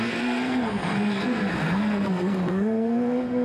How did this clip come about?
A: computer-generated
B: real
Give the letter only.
A